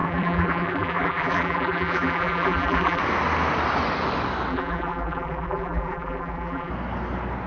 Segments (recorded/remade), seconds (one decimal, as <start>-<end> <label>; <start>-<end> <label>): 0.0-3.0 remade; 3.0-4.5 recorded; 4.5-6.7 remade; 6.7-7.5 recorded